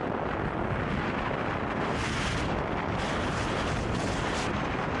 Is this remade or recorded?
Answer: recorded